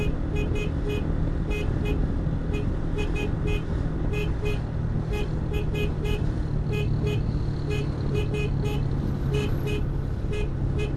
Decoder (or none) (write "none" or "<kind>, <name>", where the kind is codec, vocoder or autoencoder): none